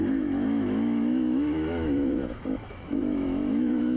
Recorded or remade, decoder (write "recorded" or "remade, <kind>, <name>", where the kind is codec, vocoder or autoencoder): remade, autoencoder, DAC-VAE